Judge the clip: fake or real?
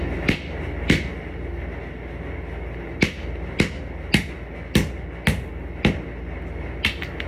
real